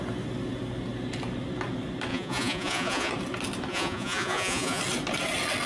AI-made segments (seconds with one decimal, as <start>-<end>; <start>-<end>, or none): 2.1-3.1; 3.7-4.8